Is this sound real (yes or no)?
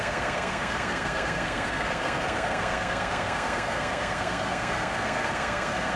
no